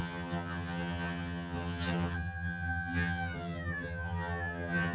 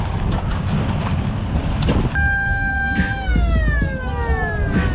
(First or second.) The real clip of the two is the second